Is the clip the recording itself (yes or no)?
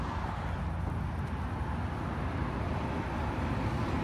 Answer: yes